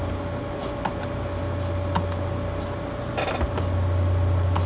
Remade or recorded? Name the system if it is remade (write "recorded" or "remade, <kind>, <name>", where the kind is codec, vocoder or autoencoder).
recorded